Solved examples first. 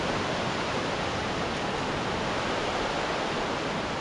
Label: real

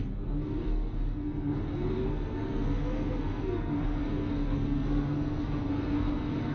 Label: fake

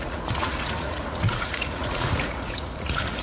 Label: fake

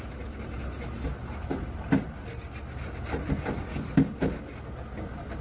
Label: real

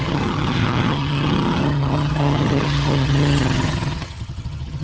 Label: fake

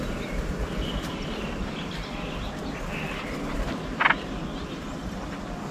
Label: real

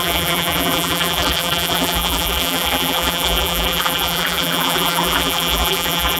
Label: fake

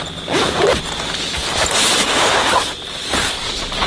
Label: real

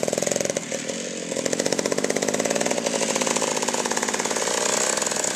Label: real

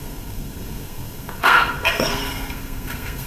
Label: fake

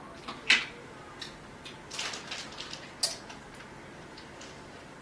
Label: real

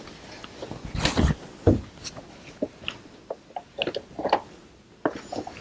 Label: real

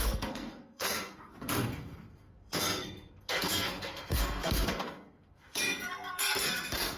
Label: fake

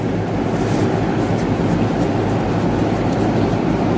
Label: real